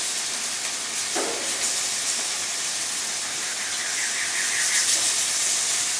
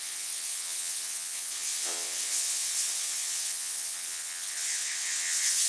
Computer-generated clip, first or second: second